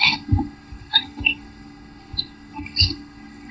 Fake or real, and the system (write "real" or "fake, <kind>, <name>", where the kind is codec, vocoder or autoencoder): fake, codec, SNAC